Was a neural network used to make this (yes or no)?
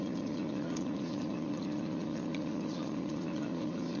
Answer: yes